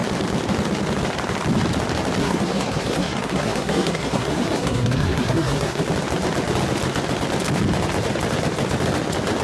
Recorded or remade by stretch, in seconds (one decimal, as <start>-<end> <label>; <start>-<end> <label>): 0.0-2.2 recorded; 2.2-5.8 remade; 5.8-9.4 recorded